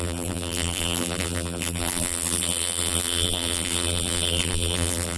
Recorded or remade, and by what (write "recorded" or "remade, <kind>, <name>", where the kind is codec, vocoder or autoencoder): remade, vocoder, BigVGAN v2